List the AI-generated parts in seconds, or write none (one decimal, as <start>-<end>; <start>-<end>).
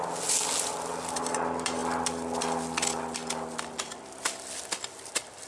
none